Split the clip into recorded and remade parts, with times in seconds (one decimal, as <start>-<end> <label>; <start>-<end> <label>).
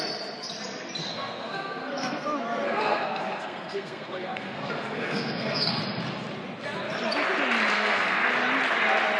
0.0-1.0 recorded; 1.0-5.8 remade; 5.8-7.7 recorded; 7.7-8.3 remade; 8.3-9.2 recorded